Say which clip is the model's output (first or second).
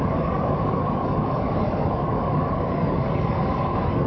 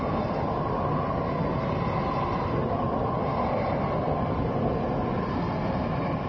first